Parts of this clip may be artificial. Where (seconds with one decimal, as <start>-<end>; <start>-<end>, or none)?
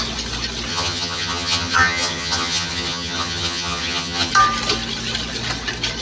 0.7-4.3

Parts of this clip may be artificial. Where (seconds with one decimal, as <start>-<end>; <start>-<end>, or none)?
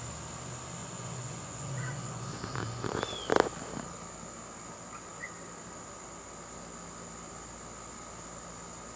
0.8-3.0